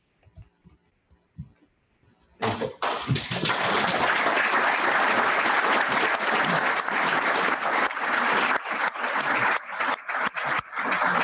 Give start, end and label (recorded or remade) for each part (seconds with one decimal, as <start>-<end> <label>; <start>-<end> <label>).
0.0-11.2 recorded